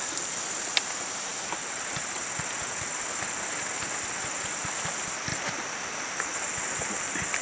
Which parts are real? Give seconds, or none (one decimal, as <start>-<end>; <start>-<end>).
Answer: 0.0-7.4